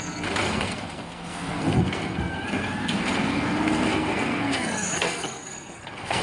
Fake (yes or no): yes